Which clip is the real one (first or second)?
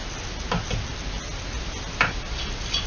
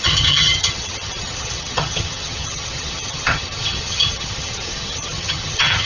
first